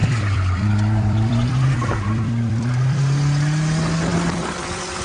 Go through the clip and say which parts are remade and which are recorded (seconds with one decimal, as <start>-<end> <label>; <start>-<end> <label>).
0.0-3.0 remade; 3.0-4.1 recorded; 4.1-5.0 remade